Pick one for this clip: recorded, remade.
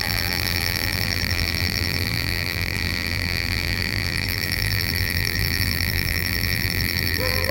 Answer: remade